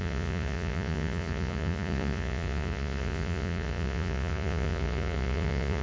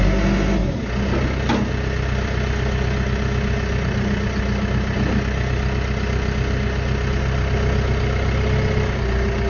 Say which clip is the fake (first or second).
first